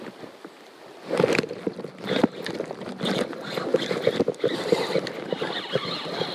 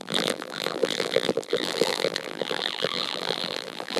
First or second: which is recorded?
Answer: first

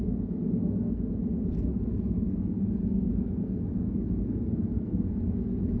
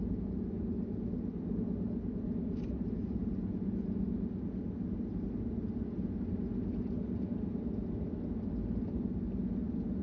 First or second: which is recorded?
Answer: second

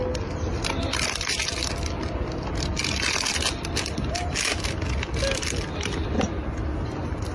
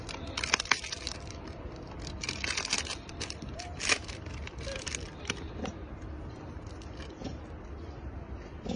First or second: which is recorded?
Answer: first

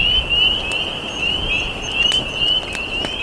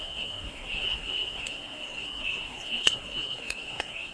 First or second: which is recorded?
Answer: first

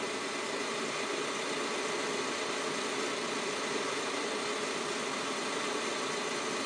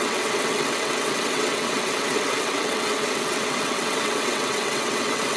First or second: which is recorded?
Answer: first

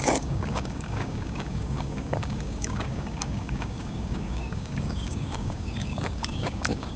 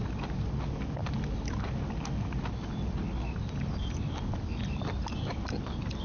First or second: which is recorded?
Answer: second